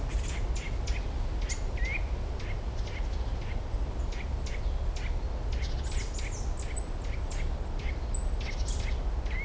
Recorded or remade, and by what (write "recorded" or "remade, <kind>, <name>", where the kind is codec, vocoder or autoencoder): recorded